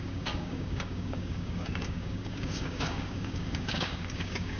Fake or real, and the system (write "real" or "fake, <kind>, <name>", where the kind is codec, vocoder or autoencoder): fake, codec, DAC